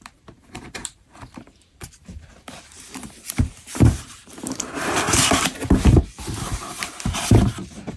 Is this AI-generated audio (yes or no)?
yes